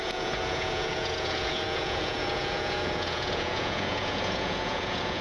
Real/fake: fake